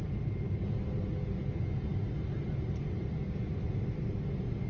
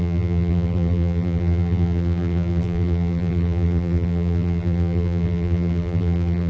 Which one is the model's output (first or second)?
second